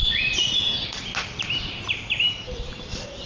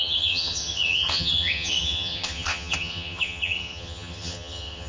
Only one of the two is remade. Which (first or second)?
second